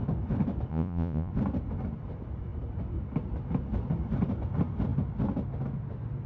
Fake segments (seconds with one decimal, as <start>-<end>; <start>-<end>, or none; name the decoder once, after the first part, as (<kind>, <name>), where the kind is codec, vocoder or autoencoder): 0.7-1.3 (vocoder, Vocos)

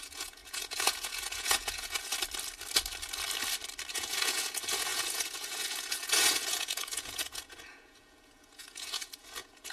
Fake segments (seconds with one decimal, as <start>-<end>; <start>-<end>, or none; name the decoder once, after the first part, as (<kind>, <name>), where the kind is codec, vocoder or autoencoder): 0.0-2.1 (vocoder, Vocos); 3.9-9.7

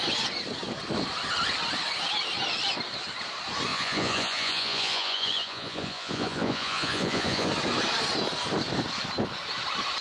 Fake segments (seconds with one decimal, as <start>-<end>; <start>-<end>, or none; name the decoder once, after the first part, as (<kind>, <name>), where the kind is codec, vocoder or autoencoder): 3.7-7.5 (vocoder, Vocos)